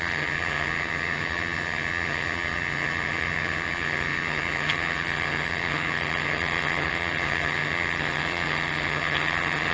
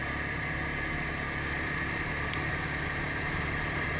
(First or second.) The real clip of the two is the second